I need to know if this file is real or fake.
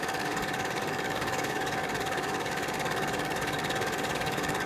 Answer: fake